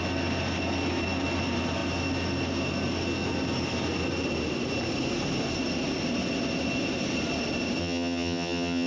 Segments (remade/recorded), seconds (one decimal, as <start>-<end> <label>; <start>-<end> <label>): 0.0-7.8 recorded; 7.8-8.9 remade

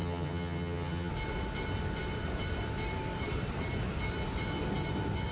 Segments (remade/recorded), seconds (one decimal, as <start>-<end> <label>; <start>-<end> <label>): 0.0-1.1 remade; 1.1-5.3 recorded

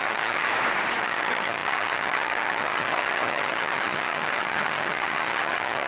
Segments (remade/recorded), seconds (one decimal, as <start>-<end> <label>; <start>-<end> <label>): 0.0-0.5 remade; 0.5-1.0 recorded; 1.0-5.9 remade

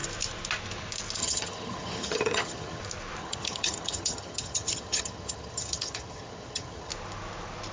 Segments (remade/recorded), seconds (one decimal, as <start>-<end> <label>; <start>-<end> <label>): 0.0-1.2 recorded; 1.2-2.8 remade; 2.8-3.2 recorded; 3.2-6.9 remade; 6.9-7.7 recorded

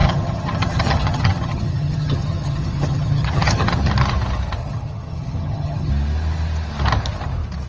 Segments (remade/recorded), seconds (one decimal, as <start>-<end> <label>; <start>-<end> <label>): 0.0-3.8 remade; 3.8-4.6 recorded; 4.6-5.9 remade; 5.9-7.7 recorded